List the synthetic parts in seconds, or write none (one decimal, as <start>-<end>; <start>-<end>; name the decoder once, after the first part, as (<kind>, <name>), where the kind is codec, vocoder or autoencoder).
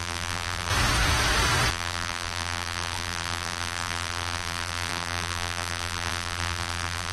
0.0-0.7 (vocoder, BigVGAN v2); 1.7-7.1